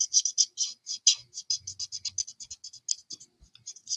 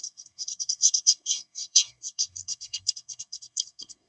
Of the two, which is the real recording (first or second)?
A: first